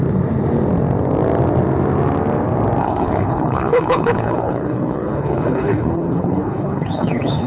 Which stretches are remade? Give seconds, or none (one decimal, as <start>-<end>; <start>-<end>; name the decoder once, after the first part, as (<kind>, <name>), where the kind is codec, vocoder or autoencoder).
2.8-7.5 (codec, HILCodec)